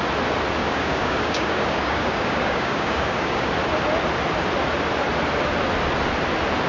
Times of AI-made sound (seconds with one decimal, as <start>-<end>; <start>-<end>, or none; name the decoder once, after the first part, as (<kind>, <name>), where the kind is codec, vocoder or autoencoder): 0.6-3.5 (codec, DAC)

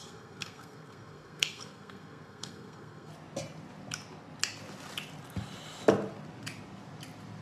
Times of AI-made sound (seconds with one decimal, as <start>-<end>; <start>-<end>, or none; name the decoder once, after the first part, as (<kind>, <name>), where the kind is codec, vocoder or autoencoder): 0.0-3.1 (codec, SNAC)

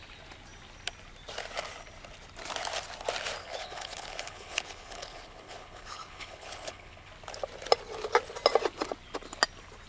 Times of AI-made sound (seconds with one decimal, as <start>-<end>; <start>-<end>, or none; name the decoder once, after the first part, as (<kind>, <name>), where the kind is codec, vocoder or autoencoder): 3.4-7.1 (codec, HILCodec)

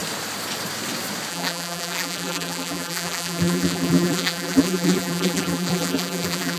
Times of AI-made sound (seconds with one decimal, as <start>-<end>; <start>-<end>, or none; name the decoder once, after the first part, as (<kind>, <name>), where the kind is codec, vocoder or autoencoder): 1.3-6.6 (vocoder, BigVGAN v2)

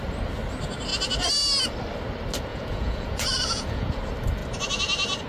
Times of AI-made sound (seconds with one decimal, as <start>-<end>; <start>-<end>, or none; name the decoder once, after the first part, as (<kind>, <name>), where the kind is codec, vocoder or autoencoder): 2.5-4.0 (vocoder, Vocos)

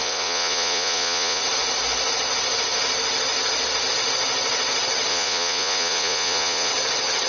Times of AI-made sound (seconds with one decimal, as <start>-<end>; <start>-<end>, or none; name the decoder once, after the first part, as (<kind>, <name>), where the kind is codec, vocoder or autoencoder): 0.0-1.4 (vocoder, Vocos); 5.1-6.7

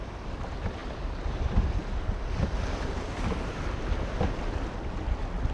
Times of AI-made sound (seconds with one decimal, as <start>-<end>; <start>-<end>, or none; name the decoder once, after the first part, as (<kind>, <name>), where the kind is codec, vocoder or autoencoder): none

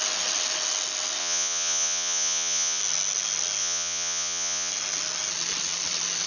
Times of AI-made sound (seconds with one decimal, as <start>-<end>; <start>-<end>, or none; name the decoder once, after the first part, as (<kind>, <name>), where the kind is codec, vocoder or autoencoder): 1.2-2.8 (vocoder, Vocos); 3.6-4.7